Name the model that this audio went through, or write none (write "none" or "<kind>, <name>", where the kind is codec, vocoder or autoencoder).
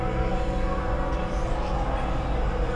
none